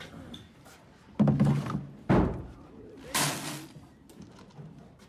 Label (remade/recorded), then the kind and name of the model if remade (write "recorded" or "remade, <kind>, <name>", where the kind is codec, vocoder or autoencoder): recorded